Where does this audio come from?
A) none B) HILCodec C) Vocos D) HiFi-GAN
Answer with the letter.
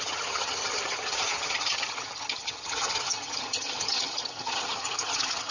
D